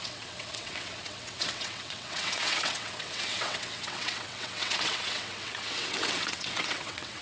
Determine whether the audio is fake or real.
fake